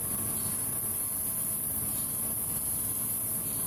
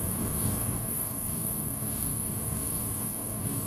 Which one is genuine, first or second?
first